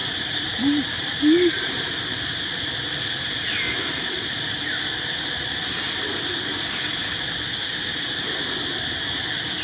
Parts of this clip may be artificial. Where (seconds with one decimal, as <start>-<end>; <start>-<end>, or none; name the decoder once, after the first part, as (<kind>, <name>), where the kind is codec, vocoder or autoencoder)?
0.0-1.9 (vocoder, BigVGAN v2)